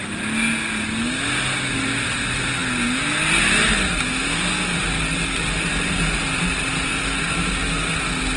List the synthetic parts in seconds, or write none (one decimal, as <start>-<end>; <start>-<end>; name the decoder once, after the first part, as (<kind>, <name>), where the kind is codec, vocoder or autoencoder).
none